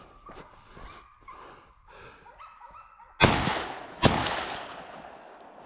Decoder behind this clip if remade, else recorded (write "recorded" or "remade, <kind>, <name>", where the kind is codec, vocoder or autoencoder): recorded